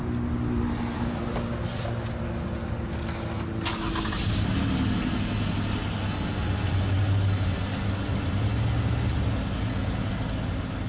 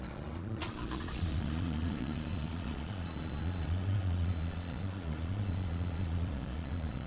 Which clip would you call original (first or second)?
first